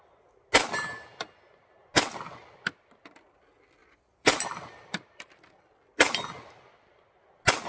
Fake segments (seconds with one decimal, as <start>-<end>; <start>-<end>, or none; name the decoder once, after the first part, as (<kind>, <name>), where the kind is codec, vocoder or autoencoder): 3.8-5.5 (vocoder, BigVGAN v2)